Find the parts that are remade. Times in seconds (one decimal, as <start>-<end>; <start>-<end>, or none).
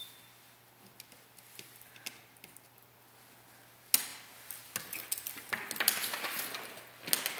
none